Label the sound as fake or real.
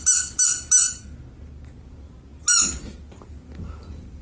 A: real